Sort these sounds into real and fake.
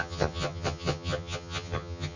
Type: fake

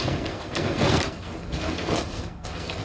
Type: fake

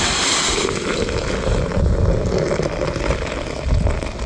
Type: real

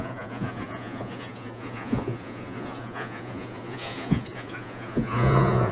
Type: fake